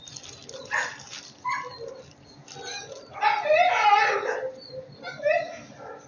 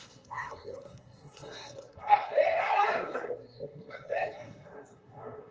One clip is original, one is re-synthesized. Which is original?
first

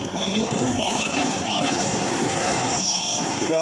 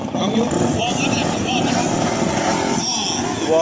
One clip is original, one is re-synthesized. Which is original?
second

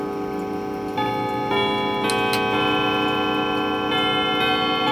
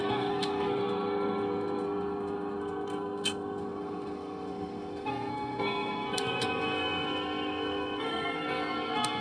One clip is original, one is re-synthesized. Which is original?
first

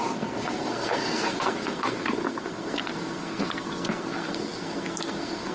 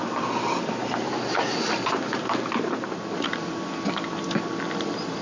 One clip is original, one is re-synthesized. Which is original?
second